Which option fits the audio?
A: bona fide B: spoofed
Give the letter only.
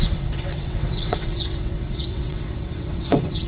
B